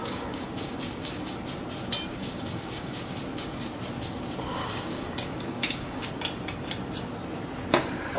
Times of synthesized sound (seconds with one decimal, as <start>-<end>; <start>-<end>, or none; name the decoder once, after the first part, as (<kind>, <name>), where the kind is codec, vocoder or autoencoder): 0.0-1.3 (codec, DAC); 2.1-3.2; 4.6-6.1